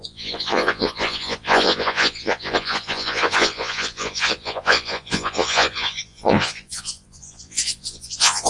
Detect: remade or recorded remade